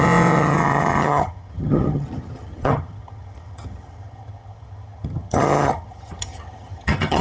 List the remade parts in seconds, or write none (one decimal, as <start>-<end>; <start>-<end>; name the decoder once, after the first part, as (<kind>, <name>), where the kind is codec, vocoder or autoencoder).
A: 0.0-7.2 (vocoder, HiFi-GAN)